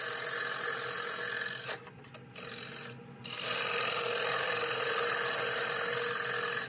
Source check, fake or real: real